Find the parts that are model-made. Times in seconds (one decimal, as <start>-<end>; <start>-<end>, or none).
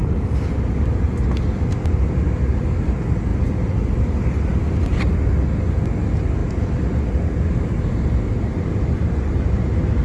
none